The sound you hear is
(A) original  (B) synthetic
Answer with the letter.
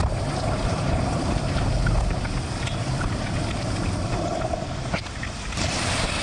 B